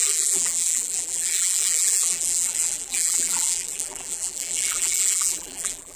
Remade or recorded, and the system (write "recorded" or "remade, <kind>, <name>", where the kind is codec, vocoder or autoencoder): remade, vocoder, BigVGAN v2